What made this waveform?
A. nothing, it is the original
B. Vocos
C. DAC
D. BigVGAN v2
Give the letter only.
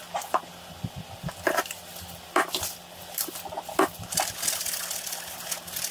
D